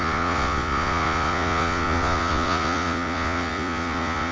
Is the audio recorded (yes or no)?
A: no